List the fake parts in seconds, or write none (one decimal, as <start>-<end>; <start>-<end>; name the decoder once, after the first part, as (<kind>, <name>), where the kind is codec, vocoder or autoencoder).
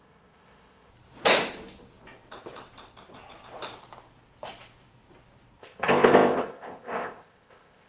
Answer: 0.0-0.9 (codec, ZipCodec); 5.6-7.9